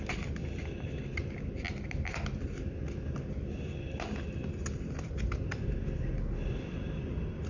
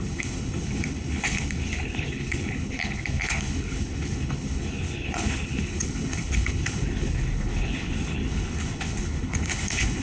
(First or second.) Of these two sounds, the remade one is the second